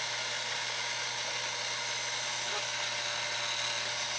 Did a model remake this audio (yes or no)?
no